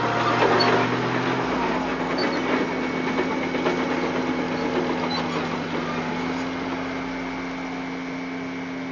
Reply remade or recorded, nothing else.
recorded